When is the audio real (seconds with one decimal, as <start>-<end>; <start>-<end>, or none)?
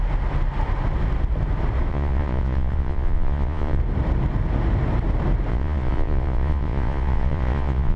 0.0-1.9; 3.8-5.5